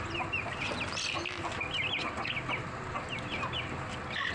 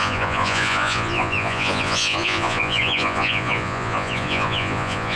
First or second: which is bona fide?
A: first